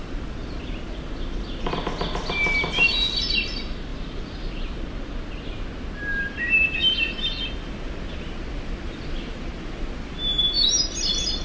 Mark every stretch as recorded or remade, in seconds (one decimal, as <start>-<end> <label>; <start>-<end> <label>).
0.0-11.4 recorded